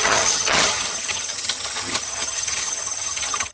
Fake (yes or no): yes